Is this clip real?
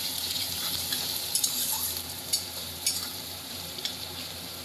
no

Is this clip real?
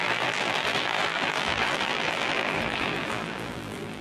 no